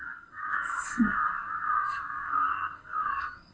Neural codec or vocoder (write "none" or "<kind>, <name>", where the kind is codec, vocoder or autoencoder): codec, SNAC